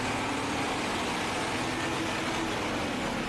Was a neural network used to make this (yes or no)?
no